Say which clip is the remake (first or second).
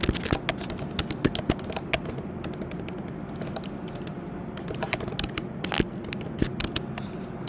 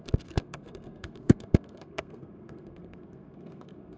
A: second